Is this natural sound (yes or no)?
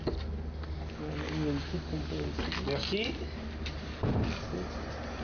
yes